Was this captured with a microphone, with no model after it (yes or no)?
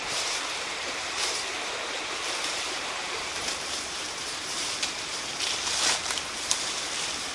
no